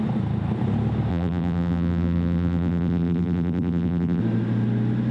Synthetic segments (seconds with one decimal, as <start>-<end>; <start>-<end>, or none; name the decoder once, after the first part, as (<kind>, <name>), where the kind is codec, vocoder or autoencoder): 1.1-4.2 (vocoder, BigVGAN v2)